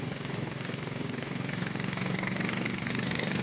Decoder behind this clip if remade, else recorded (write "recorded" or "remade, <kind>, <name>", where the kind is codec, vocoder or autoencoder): remade, codec, DAC